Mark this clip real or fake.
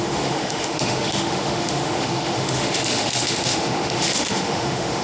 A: fake